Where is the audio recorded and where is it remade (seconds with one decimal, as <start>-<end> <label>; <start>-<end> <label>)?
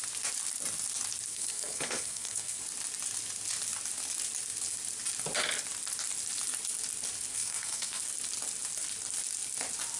0.0-1.3 recorded; 1.3-2.6 remade; 2.6-7.3 recorded; 7.3-8.0 remade; 8.0-10.0 recorded